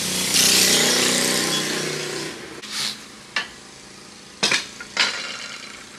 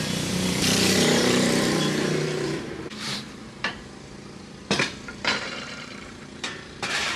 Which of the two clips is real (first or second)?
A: first